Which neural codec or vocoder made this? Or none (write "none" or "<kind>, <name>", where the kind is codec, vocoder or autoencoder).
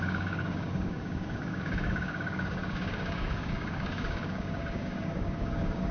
codec, DAC